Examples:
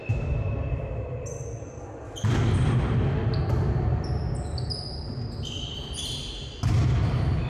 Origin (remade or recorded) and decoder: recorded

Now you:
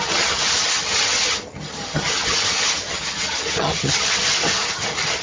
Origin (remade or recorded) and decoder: remade, vocoder, HiFi-GAN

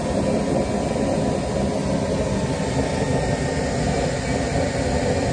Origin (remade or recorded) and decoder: recorded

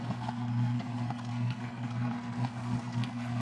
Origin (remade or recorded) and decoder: remade, codec, SNAC